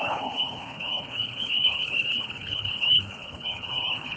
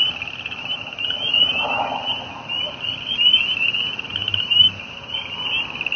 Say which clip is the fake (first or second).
first